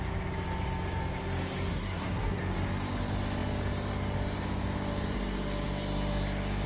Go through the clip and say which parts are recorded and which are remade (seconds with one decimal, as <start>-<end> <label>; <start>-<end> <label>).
0.0-1.7 recorded; 1.7-2.4 remade; 2.4-6.7 recorded